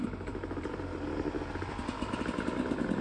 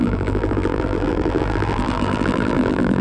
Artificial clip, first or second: second